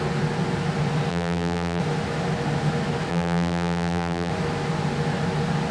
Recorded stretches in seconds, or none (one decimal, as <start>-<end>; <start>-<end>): 0.0-1.1; 1.8-3.1; 4.3-5.7